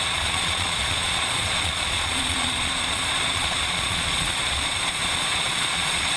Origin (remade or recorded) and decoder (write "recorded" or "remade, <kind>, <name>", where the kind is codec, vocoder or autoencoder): remade, vocoder, Vocos